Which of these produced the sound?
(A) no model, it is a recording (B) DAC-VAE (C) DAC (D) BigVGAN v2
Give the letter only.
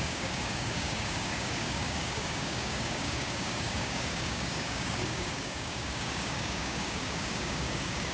C